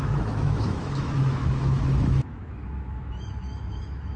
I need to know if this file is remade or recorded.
remade